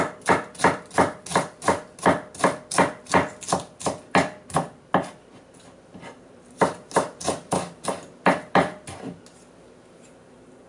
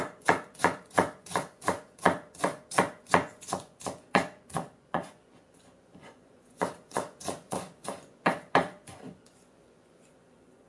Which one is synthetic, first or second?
second